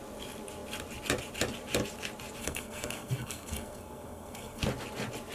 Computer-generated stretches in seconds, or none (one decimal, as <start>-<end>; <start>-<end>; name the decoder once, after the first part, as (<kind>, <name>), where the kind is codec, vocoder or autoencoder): 2.4-4.6 (codec, SNAC)